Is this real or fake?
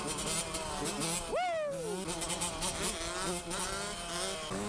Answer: real